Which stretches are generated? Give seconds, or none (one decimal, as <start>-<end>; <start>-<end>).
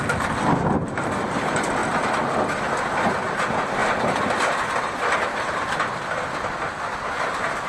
none